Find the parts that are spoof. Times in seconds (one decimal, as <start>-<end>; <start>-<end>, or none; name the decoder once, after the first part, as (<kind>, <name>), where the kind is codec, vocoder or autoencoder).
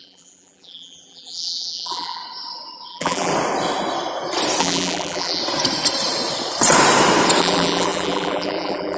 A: 0.0-2.2 (vocoder, BigVGAN v2); 2.9-3.3; 4.6-5.4; 7.4-9.0